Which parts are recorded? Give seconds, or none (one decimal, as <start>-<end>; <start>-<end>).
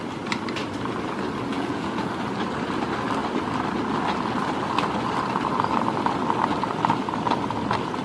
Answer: 0.0-1.5; 2.1-8.0